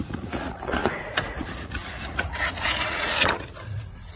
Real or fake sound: fake